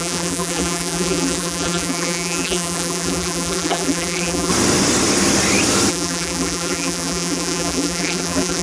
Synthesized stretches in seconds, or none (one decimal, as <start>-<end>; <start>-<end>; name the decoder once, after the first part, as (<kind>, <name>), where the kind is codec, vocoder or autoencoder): 0.0-4.5 (vocoder, BigVGAN v2); 5.9-8.6